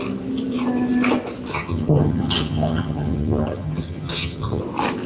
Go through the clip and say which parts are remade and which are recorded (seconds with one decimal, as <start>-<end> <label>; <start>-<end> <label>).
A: 0.0-1.5 recorded; 1.5-4.6 remade; 4.6-5.1 recorded